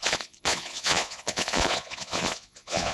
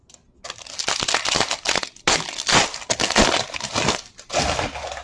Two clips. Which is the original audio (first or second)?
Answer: second